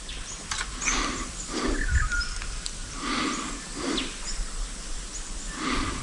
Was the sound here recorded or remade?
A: recorded